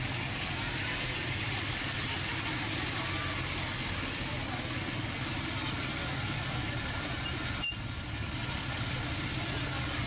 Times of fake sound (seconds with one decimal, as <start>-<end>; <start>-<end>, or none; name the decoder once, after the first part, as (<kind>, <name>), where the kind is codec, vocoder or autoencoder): 0.8-2.8 (vocoder, BigVGAN v2)